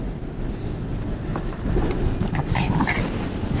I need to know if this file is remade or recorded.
recorded